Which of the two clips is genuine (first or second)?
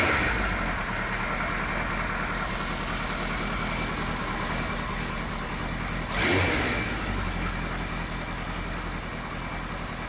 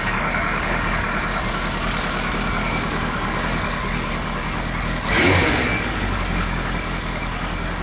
first